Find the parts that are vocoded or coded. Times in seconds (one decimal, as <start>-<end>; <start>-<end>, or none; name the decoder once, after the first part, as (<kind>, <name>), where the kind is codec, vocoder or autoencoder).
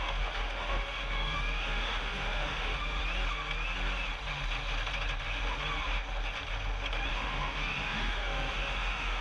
0.0-3.0 (autoencoder, DAC-VAE); 7.1-9.2